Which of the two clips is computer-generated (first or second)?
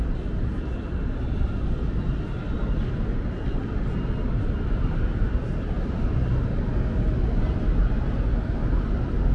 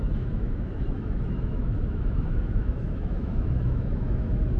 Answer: second